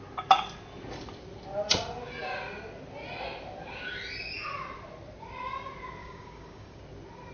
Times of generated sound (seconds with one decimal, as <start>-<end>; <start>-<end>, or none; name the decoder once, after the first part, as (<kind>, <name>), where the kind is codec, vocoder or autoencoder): 6.0-6.8 (codec, DAC)